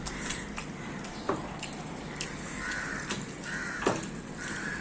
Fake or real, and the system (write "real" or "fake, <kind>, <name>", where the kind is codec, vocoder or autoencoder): fake, vocoder, BigVGAN v2